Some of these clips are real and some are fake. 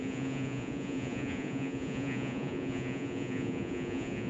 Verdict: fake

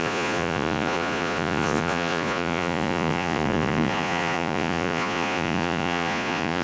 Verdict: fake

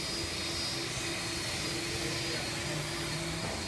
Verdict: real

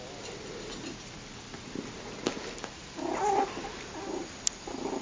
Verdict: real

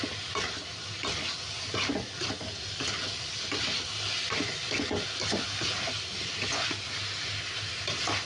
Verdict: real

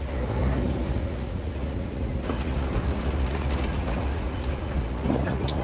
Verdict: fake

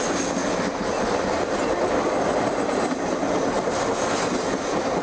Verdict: real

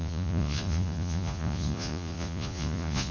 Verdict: fake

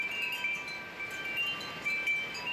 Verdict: real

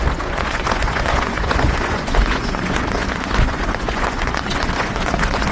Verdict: fake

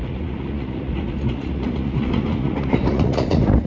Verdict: fake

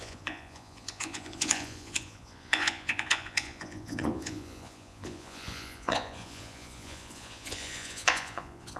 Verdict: fake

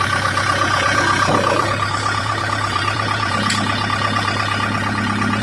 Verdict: fake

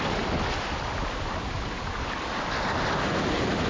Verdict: real